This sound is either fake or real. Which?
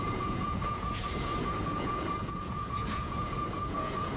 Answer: fake